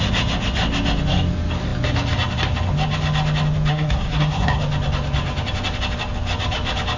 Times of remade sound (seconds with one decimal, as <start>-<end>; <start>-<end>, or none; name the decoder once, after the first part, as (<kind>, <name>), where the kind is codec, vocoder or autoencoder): 3.7-4.6 (codec, SNAC)